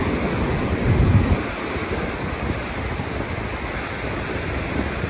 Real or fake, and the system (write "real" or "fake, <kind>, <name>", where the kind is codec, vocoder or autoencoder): real